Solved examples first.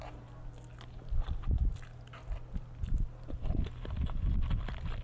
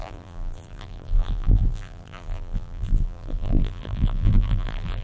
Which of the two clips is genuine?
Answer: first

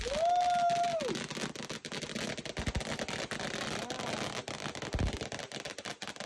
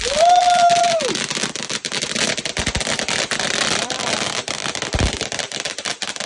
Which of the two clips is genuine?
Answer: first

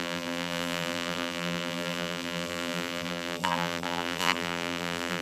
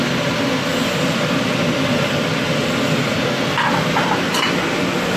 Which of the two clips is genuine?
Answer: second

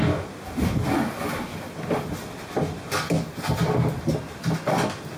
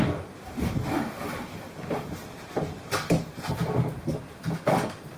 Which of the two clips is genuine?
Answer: first